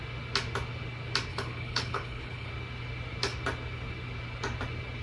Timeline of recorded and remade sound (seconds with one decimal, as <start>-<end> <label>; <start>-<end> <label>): 0.0-1.3 recorded; 1.3-2.5 remade; 2.5-5.0 recorded